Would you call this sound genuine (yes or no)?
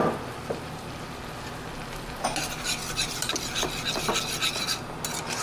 yes